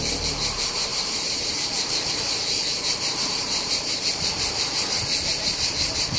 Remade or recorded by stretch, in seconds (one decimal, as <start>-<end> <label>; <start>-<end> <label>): 0.0-6.2 remade